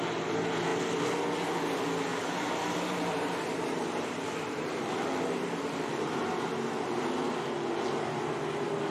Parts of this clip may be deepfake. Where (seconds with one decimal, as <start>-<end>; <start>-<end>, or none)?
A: 2.1-6.3